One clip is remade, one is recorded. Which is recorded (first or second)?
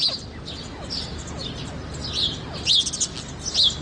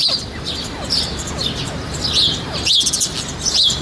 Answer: first